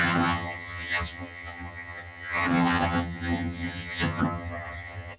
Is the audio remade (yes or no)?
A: yes